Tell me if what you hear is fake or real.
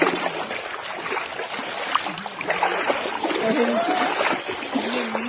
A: real